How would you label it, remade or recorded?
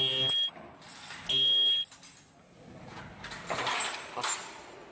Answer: recorded